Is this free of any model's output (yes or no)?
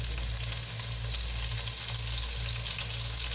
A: yes